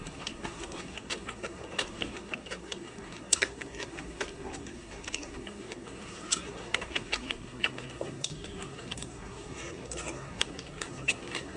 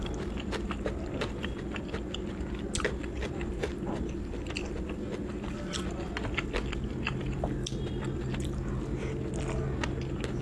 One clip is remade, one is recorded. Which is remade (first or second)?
first